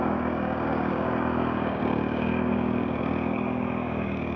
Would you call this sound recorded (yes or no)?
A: no